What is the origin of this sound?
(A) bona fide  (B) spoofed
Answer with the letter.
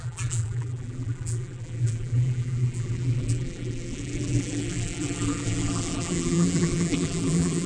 B